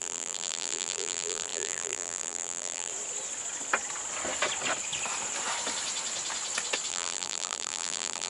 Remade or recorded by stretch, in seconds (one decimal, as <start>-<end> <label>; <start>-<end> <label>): 0.0-2.9 remade; 2.9-6.9 recorded; 6.9-8.3 remade